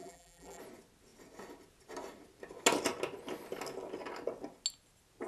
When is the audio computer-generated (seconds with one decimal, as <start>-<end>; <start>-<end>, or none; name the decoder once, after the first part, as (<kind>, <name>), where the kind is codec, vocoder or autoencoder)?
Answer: 0.0-0.6 (vocoder, BigVGAN v2)